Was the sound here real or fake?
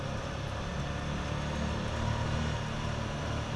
real